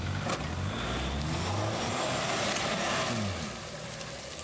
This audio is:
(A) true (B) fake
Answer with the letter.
A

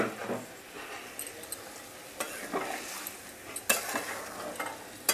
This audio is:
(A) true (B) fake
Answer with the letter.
A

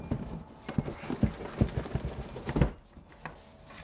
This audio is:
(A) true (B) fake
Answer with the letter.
A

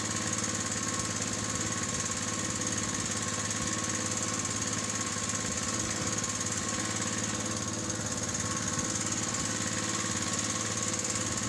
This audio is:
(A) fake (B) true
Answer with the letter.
B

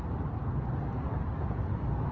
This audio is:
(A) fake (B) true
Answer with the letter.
B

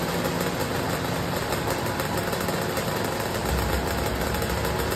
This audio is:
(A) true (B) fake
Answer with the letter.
A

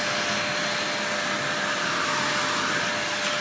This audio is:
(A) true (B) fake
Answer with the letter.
A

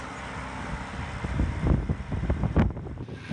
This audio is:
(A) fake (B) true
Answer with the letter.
B